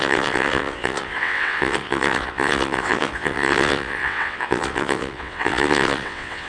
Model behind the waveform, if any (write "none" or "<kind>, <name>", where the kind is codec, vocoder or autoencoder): vocoder, WaveNeXt